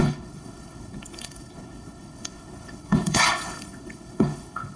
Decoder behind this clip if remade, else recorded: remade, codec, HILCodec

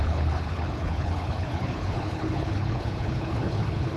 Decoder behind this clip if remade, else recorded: remade, codec, HILCodec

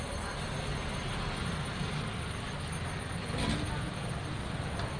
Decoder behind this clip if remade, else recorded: recorded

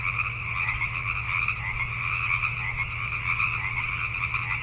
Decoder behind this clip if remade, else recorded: recorded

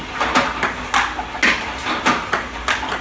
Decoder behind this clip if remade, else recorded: recorded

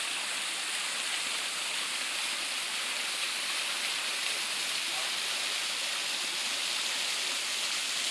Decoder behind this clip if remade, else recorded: recorded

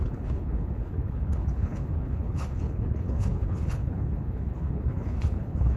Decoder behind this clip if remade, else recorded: remade, codec, HILCodec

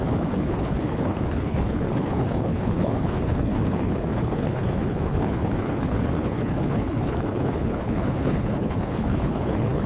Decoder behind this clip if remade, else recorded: remade, codec, HILCodec